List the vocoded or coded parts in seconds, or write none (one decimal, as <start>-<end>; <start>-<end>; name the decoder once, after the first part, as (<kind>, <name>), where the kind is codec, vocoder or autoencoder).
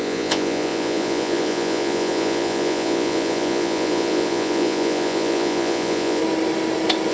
0.0-6.2 (vocoder, Vocos)